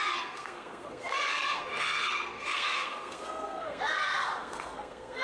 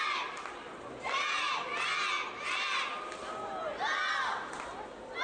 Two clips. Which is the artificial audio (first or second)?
first